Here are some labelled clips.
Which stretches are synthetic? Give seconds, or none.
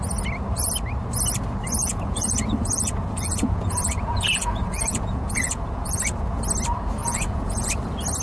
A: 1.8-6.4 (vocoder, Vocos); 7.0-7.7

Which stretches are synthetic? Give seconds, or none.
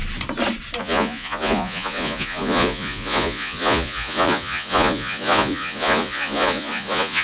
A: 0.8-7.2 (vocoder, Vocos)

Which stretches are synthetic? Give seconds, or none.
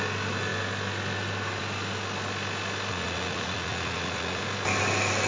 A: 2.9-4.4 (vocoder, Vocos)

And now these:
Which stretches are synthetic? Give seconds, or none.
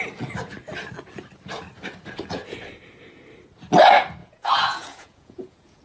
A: 4.2-5.8 (vocoder, Vocos)